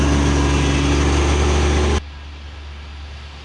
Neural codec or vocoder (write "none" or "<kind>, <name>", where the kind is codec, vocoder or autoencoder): none